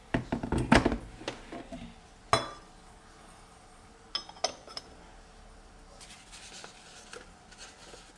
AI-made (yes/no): no